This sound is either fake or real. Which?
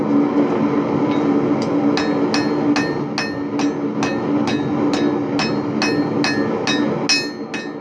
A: real